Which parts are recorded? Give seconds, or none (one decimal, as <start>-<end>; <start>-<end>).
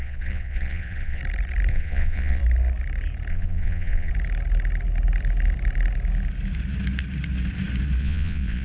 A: 1.2-1.7; 2.4-3.3; 4.1-8.0